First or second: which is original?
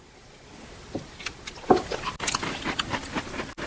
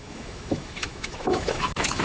first